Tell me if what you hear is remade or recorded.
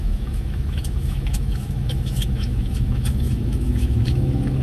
remade